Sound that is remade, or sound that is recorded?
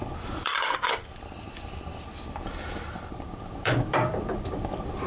remade